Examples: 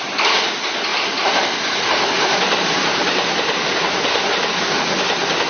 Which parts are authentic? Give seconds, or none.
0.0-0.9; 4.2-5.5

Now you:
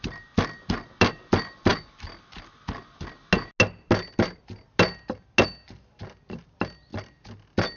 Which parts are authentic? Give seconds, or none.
0.0-7.8

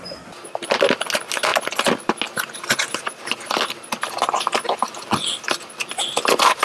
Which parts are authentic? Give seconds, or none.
0.0-6.6